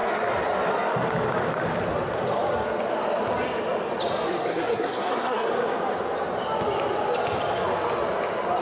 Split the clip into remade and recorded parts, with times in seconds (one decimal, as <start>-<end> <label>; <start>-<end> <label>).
0.0-4.4 recorded; 4.4-5.5 remade; 5.5-8.6 recorded

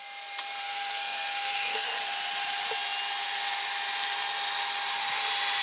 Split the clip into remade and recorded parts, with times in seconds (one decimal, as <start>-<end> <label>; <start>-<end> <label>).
0.0-0.6 recorded; 0.6-2.0 remade; 2.0-5.6 recorded

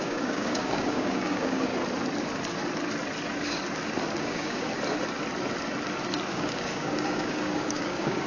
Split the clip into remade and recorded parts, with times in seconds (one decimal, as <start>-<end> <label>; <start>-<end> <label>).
0.0-1.7 remade; 1.7-4.2 recorded; 4.2-4.7 remade; 4.7-6.3 recorded; 6.3-8.3 remade